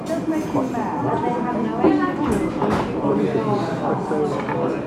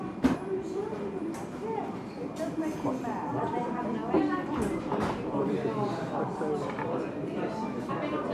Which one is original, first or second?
first